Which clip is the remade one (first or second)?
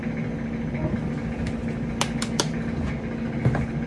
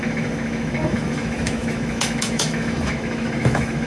second